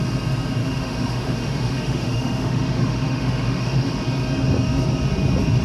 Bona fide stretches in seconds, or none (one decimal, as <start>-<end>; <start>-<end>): 0.0-0.6; 4.0-5.6